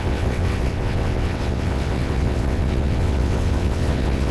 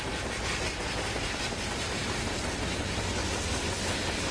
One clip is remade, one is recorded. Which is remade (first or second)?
first